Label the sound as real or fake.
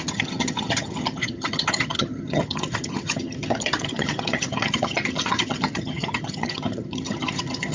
fake